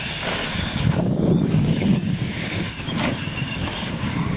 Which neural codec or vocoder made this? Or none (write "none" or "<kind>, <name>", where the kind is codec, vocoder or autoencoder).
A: codec, DAC